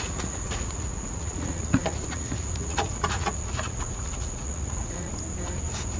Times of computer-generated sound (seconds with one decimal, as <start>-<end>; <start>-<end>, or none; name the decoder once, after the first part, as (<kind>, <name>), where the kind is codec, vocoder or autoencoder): 0.0-5.1 (vocoder, Vocos)